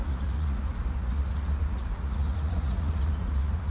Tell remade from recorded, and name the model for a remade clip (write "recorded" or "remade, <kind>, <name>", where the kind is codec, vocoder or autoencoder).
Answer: remade, vocoder, Vocos